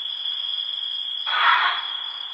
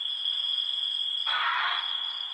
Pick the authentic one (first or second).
second